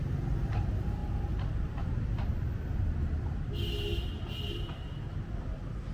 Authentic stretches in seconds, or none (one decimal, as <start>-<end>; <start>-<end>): 0.0-5.9